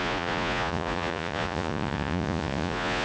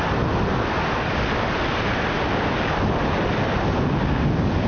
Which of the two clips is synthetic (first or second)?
first